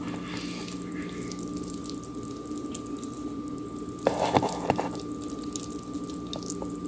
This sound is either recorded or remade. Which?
recorded